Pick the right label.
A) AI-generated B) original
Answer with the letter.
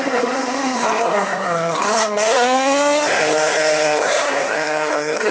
A